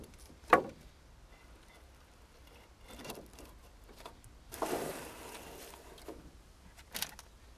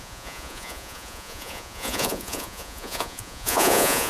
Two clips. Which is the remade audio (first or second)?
second